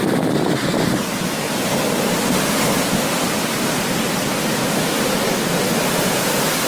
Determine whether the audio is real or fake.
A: real